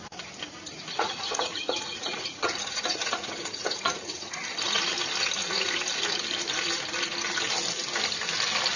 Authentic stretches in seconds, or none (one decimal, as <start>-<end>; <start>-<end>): 0.0-0.7; 4.4-5.4; 6.0-8.8